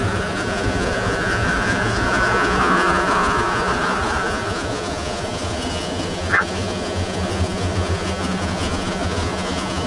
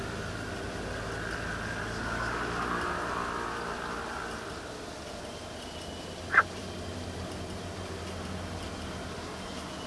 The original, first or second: second